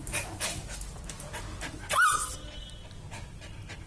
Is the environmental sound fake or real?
real